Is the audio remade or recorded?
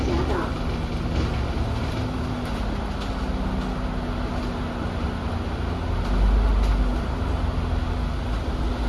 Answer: recorded